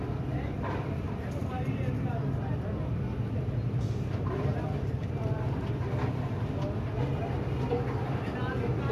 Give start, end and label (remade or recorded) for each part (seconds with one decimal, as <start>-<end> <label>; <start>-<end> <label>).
0.0-1.4 recorded; 1.4-5.4 remade; 5.4-8.9 recorded